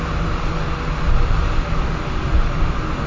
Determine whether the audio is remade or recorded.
recorded